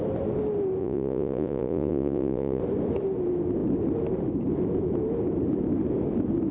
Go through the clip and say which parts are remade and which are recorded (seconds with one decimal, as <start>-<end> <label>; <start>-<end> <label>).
0.0-0.8 recorded; 0.8-2.6 remade; 2.6-6.5 recorded